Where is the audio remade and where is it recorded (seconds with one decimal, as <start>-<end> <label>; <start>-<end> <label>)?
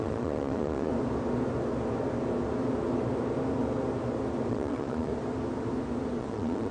0.0-0.9 remade; 0.9-4.5 recorded; 4.5-5.1 remade; 5.1-6.2 recorded; 6.2-6.7 remade